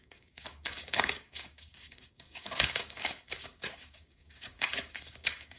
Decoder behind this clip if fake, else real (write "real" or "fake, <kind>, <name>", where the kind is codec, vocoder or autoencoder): fake, codec, DAC